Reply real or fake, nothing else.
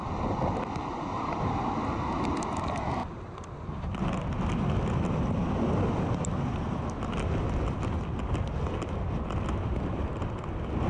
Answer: real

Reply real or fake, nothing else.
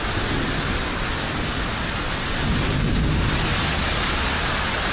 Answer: real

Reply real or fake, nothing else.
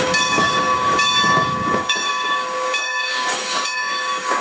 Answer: fake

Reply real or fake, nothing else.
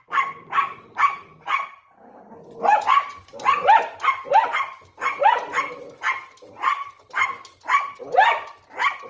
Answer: real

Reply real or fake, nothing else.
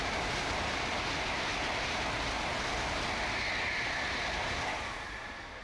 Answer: real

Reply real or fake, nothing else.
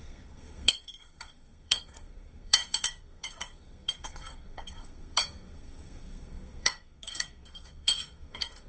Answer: fake